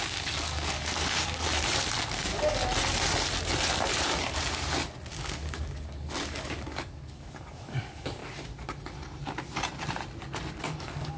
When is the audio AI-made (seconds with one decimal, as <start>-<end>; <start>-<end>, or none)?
0.0-1.5; 2.2-2.6; 5.1-8.2; 10.6-11.2